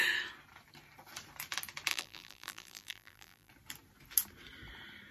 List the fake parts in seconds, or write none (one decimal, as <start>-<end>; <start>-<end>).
1.9-3.5